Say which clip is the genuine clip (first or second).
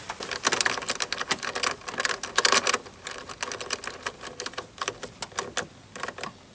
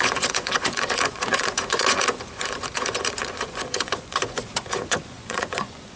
first